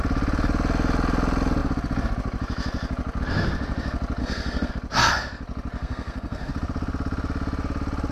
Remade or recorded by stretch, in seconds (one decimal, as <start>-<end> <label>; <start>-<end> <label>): 0.0-4.2 recorded; 4.2-4.7 remade; 4.7-5.8 recorded; 5.8-6.5 remade; 6.5-8.1 recorded